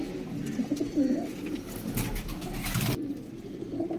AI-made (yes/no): no